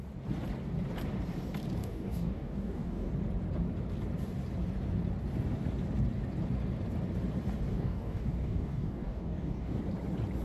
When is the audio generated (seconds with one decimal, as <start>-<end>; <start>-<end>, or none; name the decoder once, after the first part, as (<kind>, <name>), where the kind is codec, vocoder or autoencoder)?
1.8-3.1 (codec, DAC); 7.7-9.8